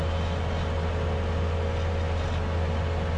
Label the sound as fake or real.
real